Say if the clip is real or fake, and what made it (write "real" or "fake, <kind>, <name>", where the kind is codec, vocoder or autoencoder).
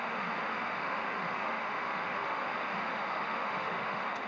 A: fake, autoencoder, DAC-VAE